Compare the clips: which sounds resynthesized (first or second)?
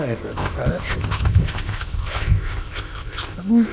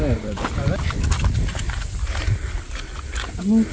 first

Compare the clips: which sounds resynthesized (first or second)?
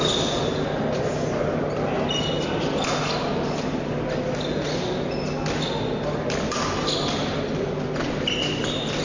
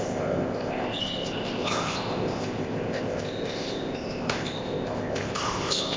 second